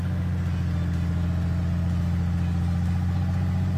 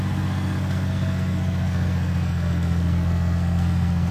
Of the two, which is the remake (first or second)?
second